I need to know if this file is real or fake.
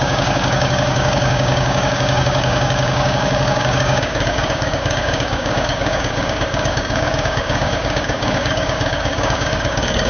fake